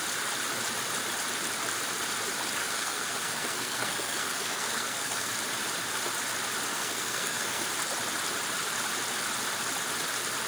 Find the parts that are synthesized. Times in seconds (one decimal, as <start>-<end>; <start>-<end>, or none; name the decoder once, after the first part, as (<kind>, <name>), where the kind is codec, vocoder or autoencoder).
2.6-5.3 (codec, SNAC); 6.7-7.7